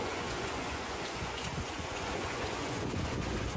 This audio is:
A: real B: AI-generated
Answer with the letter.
B